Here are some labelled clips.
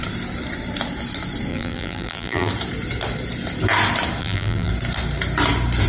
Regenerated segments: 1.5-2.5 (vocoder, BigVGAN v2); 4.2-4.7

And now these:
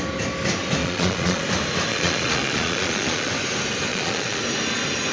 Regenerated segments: 0.8-1.4 (vocoder, Vocos); 1.9-3.3; 3.9-4.4

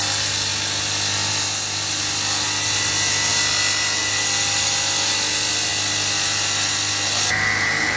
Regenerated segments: none

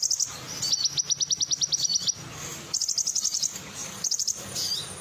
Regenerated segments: 2.5-3.4 (vocoder, BigVGAN v2); 3.8-5.0

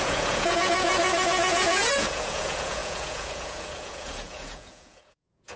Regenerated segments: 0.0-5.6 (vocoder, Vocos)

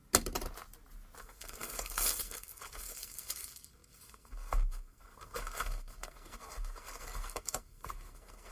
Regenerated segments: 1.2-8.5 (codec, SNAC)

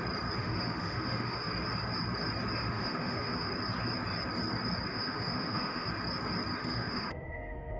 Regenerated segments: 0.4-1.5 (autoencoder, DAC-VAE); 2.6-3.5; 4.9-5.9; 6.6-7.8